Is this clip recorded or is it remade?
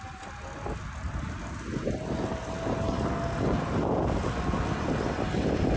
recorded